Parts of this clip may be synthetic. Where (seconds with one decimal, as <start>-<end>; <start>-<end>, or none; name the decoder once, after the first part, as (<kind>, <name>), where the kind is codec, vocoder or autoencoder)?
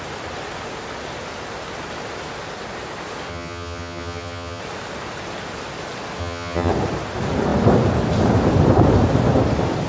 3.3-4.6 (vocoder, HiFi-GAN); 6.2-6.7